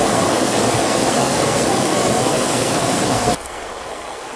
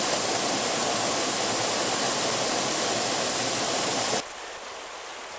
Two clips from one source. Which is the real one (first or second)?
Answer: second